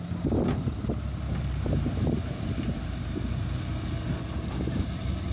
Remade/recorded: recorded